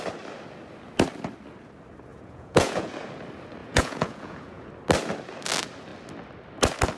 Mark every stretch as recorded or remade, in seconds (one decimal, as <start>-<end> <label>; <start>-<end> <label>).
0.0-2.1 recorded; 2.1-2.9 remade; 2.9-3.6 recorded; 3.6-4.7 remade; 4.7-7.0 recorded